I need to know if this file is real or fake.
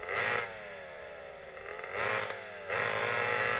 real